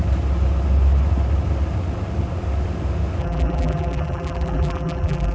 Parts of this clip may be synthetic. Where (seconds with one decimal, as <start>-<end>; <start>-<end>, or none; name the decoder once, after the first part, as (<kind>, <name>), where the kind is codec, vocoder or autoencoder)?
3.2-5.3 (vocoder, BigVGAN v2)